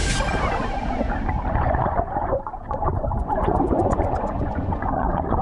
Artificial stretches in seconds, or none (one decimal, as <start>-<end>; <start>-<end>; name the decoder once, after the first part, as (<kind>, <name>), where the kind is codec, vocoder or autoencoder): 1.5-5.4 (vocoder, Vocos)